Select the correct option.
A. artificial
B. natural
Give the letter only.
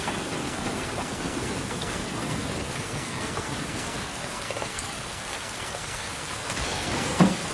A